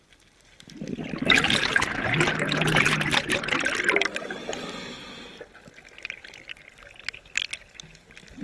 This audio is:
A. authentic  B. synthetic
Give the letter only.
A